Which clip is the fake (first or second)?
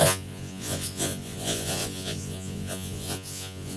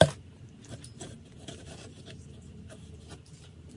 first